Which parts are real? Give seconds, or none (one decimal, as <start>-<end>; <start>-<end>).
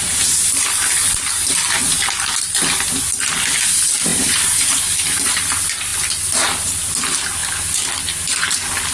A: 0.0-4.1; 5.3-8.9